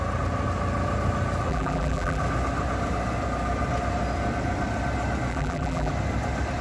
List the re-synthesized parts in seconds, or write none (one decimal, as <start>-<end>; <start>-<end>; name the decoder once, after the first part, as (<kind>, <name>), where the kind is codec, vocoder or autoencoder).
1.5-2.2 (vocoder, BigVGAN v2); 5.3-5.9